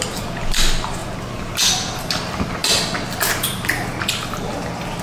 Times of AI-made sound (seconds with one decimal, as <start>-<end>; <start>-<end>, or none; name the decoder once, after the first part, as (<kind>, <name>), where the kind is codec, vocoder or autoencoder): none